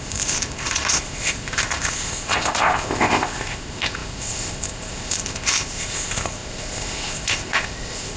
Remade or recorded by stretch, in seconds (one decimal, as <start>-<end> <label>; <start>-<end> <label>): 0.0-8.2 remade